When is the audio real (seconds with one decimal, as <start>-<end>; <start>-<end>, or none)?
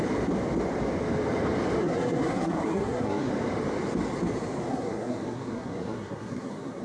0.0-1.8; 3.3-4.7